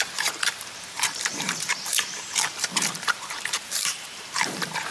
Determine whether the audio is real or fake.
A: fake